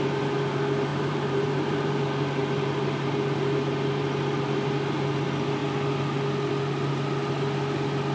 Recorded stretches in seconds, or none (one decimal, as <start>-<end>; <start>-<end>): 0.0-0.9; 2.0-8.1